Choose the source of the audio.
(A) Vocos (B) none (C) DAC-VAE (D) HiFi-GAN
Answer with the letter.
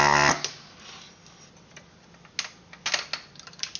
B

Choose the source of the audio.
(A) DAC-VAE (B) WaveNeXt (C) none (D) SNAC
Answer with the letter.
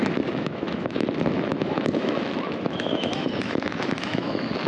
A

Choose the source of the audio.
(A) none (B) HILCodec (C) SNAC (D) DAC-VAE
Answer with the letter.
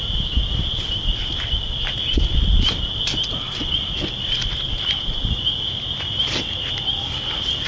A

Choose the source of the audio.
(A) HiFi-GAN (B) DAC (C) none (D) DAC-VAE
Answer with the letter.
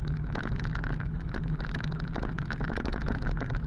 D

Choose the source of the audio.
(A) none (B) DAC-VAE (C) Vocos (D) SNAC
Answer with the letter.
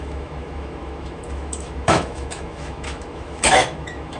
B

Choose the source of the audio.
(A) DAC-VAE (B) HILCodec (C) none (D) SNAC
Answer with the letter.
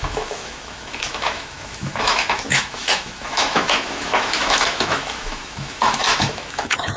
A